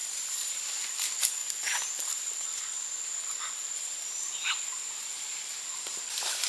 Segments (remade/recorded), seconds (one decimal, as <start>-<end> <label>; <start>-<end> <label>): 0.0-0.6 remade; 0.6-6.5 recorded